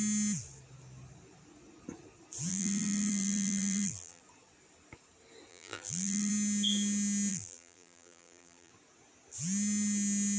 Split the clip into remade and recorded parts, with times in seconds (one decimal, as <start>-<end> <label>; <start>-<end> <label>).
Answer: 0.0-2.5 recorded; 2.5-4.2 remade; 4.2-5.5 recorded; 5.5-6.3 remade; 6.3-7.3 recorded; 7.3-8.7 remade; 8.7-10.4 recorded